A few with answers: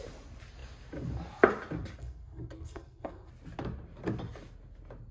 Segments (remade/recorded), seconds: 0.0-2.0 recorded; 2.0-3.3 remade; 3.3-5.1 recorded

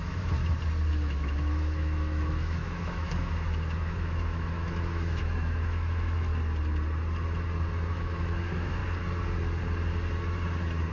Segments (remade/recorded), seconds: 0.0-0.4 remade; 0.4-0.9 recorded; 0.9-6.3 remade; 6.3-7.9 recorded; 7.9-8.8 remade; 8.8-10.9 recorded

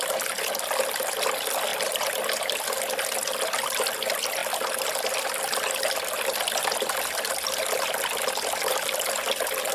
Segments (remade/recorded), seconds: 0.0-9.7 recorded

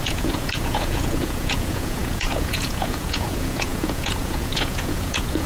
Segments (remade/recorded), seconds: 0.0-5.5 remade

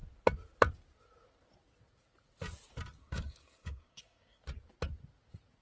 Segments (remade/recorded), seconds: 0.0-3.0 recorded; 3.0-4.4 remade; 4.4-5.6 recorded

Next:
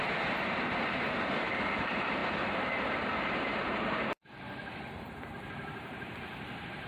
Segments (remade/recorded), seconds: 0.0-6.9 remade

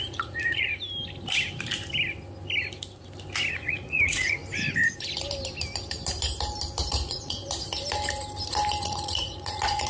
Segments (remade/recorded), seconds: 0.0-0.7 remade; 0.7-3.5 recorded; 3.5-4.4 remade; 4.4-6.9 recorded; 6.9-7.4 remade; 7.4-8.8 recorded; 8.8-9.9 remade

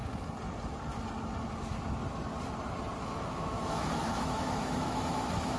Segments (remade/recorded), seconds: 0.0-3.0 recorded; 3.0-5.6 remade